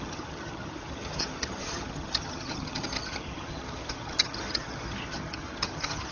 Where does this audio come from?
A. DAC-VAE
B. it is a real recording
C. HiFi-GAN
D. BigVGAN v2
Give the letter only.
C